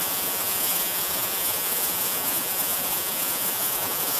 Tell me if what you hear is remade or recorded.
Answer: remade